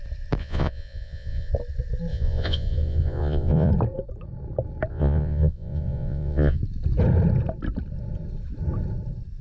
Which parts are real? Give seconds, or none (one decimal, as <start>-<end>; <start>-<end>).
0.0-0.4; 1.5-2.1; 3.7-4.9; 6.6-9.4